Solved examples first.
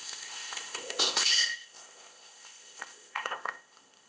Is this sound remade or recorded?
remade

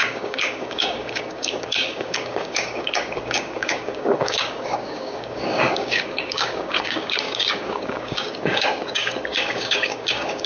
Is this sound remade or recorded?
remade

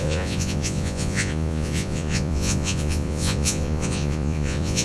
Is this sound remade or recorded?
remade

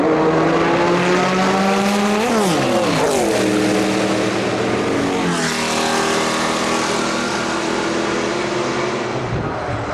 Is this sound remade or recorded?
recorded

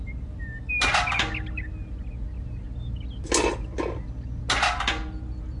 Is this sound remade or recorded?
recorded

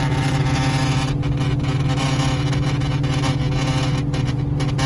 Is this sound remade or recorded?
recorded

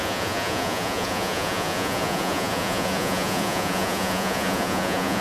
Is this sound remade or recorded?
remade